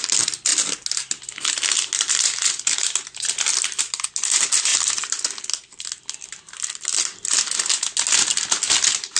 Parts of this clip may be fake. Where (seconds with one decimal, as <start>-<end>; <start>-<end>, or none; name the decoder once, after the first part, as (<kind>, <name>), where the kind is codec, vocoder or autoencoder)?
none